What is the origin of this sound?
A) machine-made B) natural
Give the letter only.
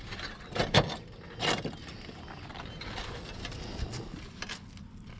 B